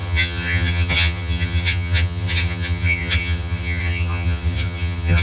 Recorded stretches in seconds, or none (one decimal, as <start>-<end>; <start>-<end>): none